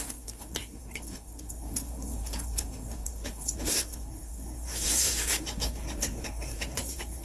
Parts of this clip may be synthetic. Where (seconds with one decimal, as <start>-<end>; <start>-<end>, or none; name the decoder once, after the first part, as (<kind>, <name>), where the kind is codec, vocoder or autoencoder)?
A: 0.0-7.2 (codec, SNAC)